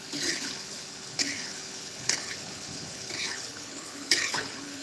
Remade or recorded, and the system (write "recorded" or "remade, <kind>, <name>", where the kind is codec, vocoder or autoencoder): remade, codec, HILCodec